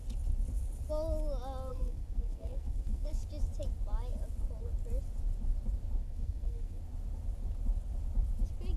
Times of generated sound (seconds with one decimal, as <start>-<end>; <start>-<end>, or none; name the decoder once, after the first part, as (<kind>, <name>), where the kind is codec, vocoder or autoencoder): 1.7-3.2 (codec, SNAC); 6.0-6.8